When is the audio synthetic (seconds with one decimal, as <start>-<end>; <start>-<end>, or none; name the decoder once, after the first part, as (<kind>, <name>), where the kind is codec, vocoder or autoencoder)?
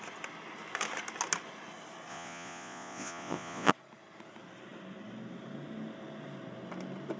2.1-3.7 (vocoder, Vocos)